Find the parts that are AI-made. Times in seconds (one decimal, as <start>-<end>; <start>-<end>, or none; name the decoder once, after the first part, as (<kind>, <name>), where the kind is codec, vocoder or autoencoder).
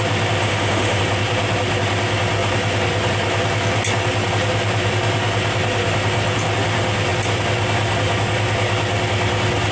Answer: 0.4-1.0 (autoencoder, DAC-VAE)